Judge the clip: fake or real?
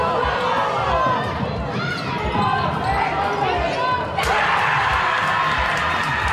real